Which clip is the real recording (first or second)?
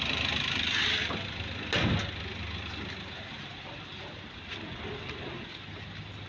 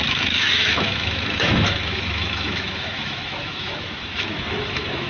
first